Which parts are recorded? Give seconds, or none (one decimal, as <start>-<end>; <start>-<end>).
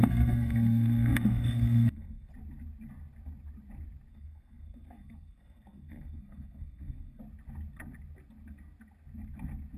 2.3-4.1; 7.2-9.8